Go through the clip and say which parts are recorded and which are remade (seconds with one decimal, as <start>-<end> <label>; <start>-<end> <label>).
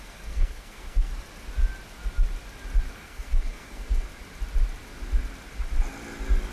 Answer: 0.0-1.1 remade; 1.1-2.9 recorded; 2.9-4.1 remade; 4.1-6.5 recorded